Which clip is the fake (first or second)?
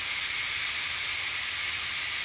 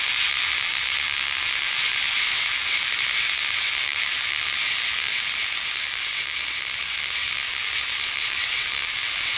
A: second